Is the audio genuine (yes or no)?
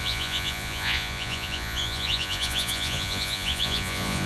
no